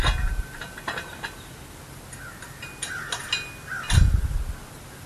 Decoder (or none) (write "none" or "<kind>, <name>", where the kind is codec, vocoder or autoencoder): none